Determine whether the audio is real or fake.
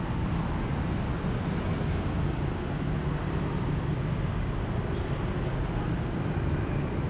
real